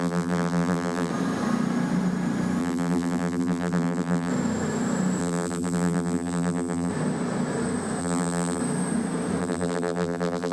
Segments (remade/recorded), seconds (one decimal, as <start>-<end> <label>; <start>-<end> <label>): 0.0-1.1 remade; 1.1-2.6 recorded; 2.6-4.3 remade; 4.3-5.2 recorded; 5.2-6.9 remade; 6.9-8.0 recorded; 8.0-8.6 remade; 8.6-9.4 recorded; 9.4-10.5 remade